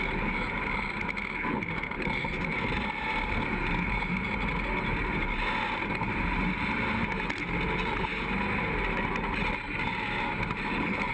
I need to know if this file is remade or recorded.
recorded